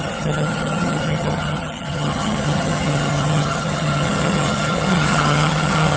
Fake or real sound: fake